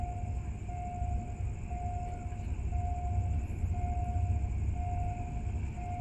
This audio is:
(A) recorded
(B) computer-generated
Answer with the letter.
A